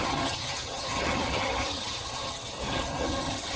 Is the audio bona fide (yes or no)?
no